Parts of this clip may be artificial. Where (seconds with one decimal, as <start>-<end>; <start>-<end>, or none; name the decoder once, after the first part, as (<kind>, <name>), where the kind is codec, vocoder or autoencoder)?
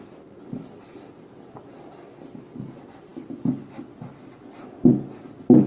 none